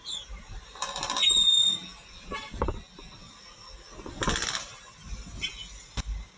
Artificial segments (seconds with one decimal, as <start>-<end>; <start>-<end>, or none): none

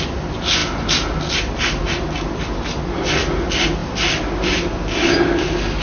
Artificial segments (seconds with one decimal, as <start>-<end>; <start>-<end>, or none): 3.8-5.3

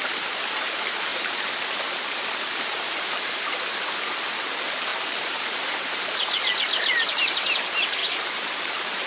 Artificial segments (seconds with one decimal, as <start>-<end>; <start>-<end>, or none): 1.1-3.1; 4.9-5.5; 8.0-9.1

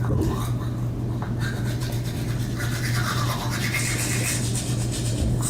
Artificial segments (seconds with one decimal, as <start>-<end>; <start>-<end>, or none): none

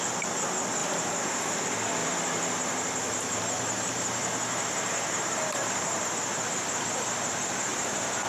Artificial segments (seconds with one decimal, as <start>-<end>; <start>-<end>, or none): 0.8-1.6; 2.0-6.0; 7.7-8.3